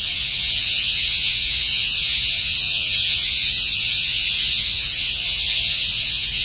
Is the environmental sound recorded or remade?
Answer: remade